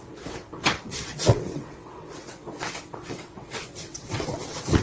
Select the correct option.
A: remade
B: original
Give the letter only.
A